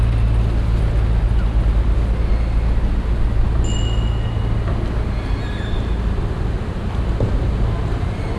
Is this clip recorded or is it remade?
recorded